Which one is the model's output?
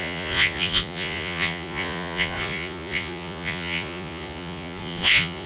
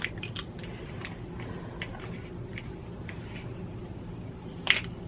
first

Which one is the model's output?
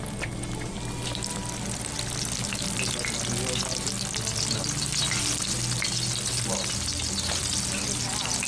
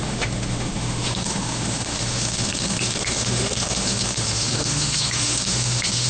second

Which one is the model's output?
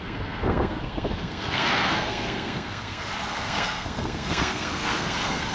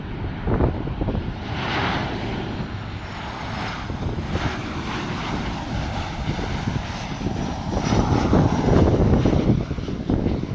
first